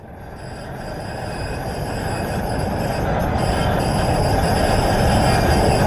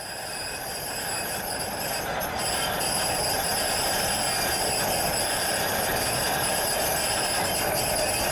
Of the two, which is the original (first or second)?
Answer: first